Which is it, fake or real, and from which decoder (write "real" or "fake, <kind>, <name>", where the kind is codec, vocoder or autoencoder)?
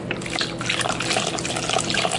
real